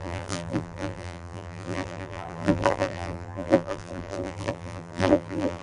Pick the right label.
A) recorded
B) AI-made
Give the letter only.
B